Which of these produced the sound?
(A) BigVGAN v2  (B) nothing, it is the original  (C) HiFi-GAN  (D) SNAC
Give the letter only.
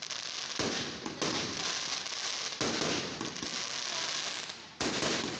B